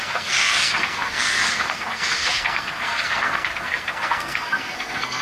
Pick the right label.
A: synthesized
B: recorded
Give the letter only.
A